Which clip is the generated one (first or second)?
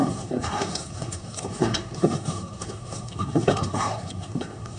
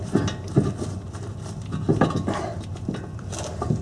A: first